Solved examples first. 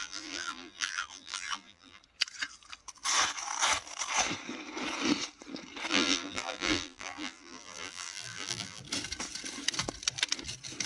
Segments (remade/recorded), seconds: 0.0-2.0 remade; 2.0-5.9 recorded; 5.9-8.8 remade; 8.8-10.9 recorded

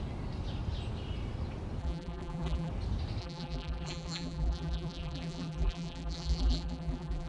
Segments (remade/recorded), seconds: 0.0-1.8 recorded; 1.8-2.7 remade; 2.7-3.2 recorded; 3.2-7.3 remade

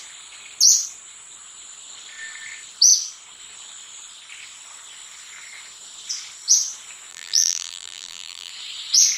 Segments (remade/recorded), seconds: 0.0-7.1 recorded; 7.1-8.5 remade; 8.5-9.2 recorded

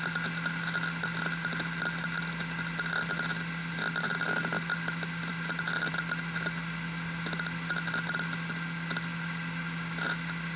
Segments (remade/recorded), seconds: 0.0-10.6 recorded

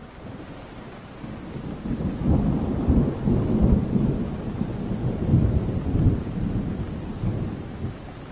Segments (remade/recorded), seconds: 0.0-5.3 recorded; 5.3-5.8 remade; 5.8-8.3 recorded